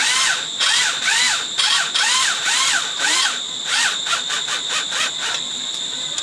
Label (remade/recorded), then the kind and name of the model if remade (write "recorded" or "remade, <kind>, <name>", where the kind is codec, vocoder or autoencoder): remade, vocoder, BigVGAN v2